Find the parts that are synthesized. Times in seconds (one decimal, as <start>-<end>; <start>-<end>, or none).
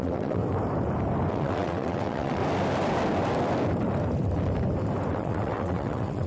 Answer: 0.0-0.4; 1.3-2.4; 5.1-6.3